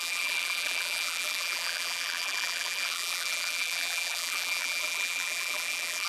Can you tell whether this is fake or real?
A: fake